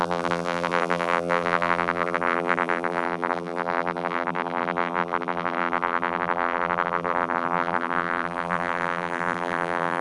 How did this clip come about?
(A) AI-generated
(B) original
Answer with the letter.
A